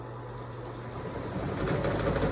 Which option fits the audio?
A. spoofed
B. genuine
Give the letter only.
B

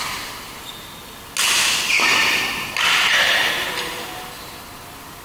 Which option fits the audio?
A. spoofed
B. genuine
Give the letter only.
B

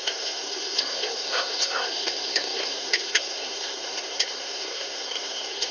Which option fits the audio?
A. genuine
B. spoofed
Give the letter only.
B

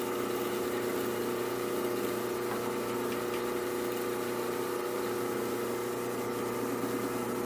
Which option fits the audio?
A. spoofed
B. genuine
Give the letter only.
B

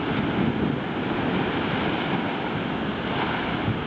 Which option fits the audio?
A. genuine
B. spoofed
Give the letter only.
A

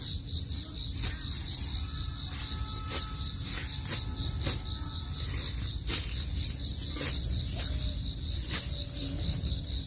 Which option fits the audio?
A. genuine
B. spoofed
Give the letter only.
A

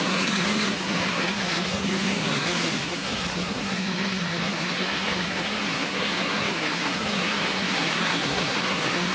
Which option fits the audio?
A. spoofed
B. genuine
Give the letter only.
A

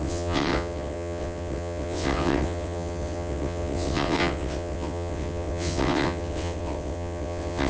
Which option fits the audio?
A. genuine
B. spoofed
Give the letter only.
B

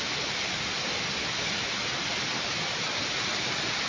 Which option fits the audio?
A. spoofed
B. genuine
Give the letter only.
B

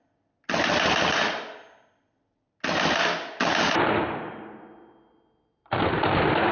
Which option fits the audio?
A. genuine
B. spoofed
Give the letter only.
A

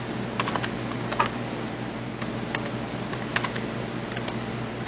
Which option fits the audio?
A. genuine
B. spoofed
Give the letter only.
A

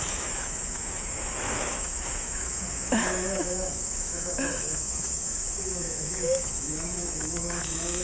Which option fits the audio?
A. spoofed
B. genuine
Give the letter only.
A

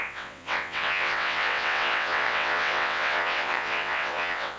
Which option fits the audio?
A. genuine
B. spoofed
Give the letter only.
B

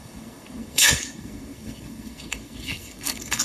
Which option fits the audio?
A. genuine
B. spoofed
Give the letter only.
B